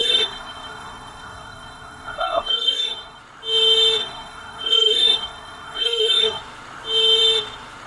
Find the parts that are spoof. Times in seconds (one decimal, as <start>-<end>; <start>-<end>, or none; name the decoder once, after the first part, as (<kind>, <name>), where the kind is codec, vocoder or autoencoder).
0.0-3.2 (codec, SNAC); 4.0-6.4